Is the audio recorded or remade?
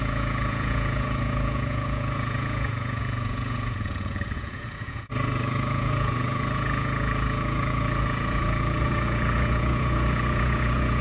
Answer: remade